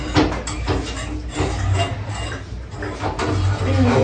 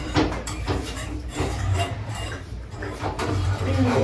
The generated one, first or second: second